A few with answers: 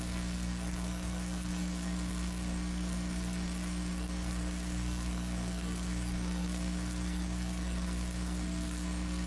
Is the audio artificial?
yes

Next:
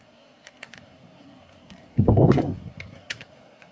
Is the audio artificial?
yes